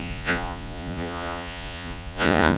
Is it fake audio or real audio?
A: fake